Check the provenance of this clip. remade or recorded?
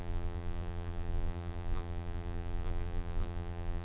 remade